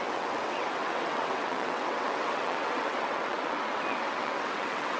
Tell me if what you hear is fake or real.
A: fake